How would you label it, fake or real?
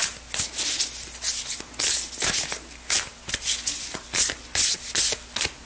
real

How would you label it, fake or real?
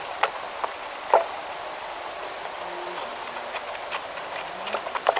real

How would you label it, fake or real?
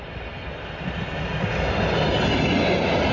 real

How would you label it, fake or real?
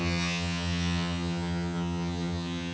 fake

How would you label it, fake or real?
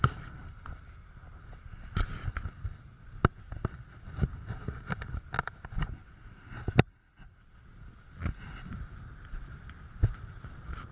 real